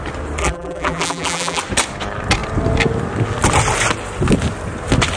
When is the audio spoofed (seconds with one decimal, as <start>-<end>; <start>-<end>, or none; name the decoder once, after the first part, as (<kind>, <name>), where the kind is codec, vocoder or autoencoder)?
0.4-1.6 (vocoder, BigVGAN v2)